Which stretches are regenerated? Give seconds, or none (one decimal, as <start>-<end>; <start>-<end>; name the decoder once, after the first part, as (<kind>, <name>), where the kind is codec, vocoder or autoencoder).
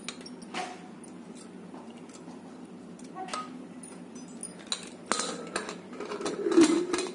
none